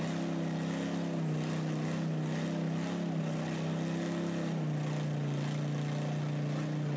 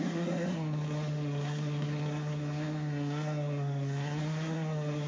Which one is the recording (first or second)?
first